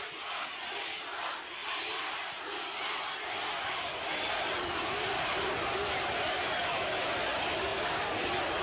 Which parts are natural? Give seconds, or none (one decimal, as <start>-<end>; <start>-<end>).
0.0-8.6